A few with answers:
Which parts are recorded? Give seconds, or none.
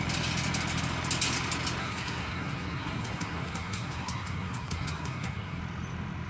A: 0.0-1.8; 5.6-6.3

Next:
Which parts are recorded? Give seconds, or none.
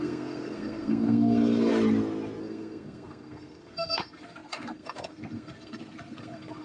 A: 1.7-2.4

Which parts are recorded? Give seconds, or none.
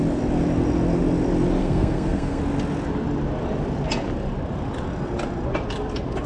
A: 0.0-1.6; 2.4-6.3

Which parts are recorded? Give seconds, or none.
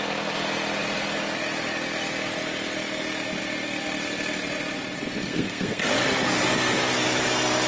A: 0.0-5.3; 5.9-7.7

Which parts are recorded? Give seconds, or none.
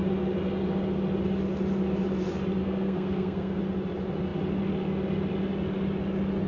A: 0.0-2.6; 3.6-6.5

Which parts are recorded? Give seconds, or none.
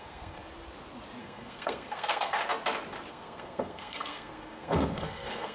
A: 0.4-1.2; 2.4-3.1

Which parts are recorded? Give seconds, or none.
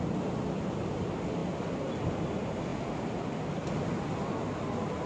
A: 0.0-5.1